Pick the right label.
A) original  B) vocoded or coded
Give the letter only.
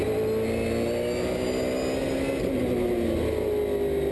A